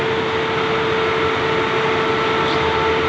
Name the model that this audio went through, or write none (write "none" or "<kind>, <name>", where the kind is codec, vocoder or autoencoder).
none